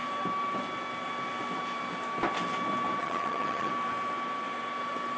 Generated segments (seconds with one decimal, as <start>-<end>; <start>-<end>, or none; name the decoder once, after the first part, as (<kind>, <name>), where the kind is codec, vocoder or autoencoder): 3.0-3.7 (vocoder, HiFi-GAN)